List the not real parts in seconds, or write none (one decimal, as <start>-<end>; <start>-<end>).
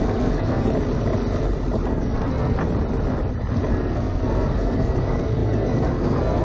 0.0-0.7; 1.9-2.6; 3.7-6.4